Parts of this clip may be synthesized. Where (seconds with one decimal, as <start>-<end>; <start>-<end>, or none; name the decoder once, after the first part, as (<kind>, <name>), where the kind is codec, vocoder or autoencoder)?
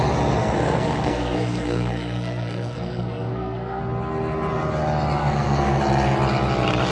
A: 0.4-3.8 (codec, SNAC); 5.2-5.8